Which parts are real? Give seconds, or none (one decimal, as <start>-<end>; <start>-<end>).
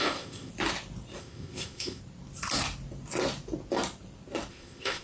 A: 0.5-1.2; 2.0-4.5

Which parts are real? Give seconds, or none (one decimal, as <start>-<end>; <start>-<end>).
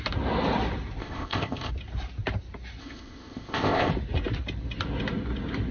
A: 0.0-1.0; 1.7-2.8; 3.9-5.7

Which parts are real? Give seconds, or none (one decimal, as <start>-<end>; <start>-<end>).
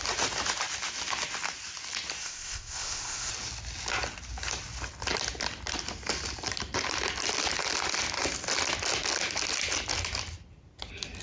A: 0.0-2.2; 3.3-11.2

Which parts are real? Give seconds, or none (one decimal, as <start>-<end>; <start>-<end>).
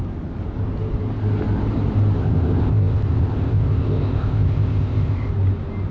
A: 0.0-2.2; 5.3-5.9